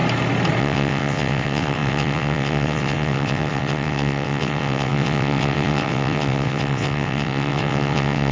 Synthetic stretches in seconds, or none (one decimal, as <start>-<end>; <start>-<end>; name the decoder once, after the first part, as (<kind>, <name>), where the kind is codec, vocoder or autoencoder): 0.6-8.3 (vocoder, WaveNeXt)